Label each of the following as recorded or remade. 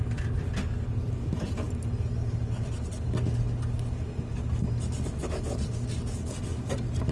recorded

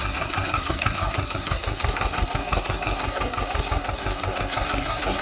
remade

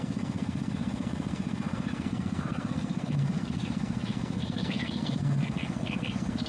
remade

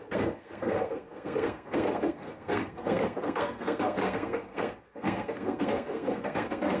remade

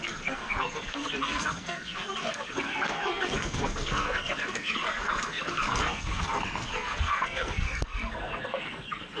remade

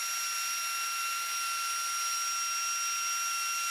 recorded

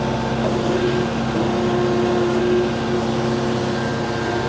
recorded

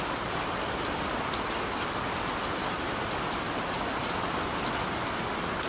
recorded